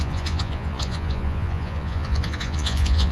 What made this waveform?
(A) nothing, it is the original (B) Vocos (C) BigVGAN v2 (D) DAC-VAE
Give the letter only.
B